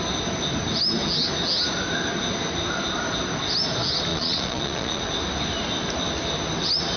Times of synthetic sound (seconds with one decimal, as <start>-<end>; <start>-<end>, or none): 4.1-5.0